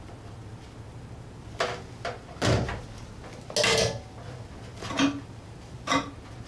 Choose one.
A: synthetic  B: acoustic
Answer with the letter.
B